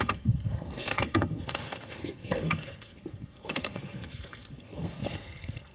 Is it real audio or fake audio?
fake